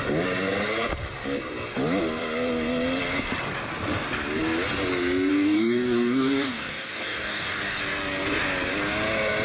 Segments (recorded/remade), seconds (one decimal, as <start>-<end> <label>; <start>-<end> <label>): 0.0-5.3 recorded; 5.3-7.8 remade; 7.8-9.4 recorded